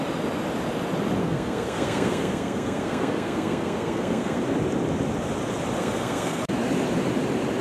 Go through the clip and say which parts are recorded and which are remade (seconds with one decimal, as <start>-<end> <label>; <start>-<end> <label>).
0.0-1.2 recorded; 1.2-4.4 remade; 4.4-5.8 recorded; 5.8-6.5 remade; 6.5-7.6 recorded